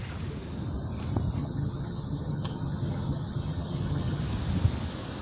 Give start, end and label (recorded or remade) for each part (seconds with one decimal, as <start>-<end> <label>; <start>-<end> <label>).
0.0-1.4 recorded; 1.4-4.2 remade; 4.2-5.2 recorded